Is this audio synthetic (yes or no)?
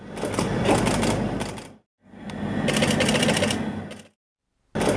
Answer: no